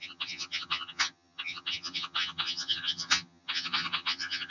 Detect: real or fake fake